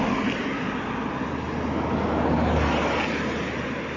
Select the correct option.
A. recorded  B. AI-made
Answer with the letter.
A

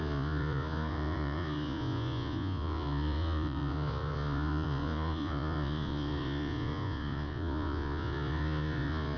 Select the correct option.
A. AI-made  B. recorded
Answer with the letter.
A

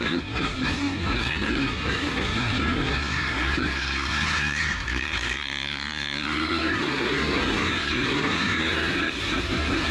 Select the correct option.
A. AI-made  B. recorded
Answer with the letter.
A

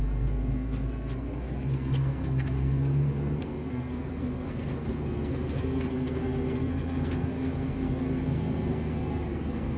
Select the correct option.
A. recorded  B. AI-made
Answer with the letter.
B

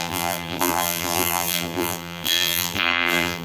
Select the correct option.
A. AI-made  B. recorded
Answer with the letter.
A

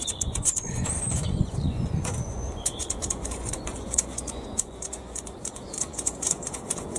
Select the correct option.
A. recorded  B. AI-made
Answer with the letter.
B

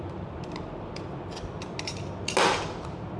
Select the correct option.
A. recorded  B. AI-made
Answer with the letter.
A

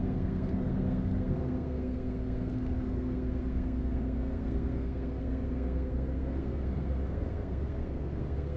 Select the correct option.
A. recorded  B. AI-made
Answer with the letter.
B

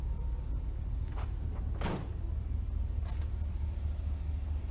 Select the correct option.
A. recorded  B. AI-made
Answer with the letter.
A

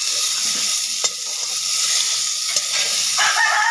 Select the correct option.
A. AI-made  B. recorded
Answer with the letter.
B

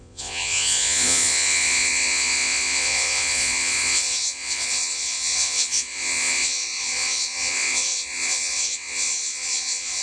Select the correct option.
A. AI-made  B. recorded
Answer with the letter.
A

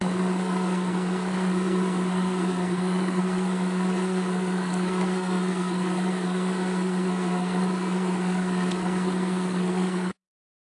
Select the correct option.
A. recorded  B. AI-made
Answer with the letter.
B